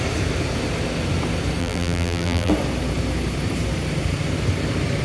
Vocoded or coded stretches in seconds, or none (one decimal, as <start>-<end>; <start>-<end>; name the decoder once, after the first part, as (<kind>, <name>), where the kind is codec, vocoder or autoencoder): 1.6-2.5 (vocoder, BigVGAN v2)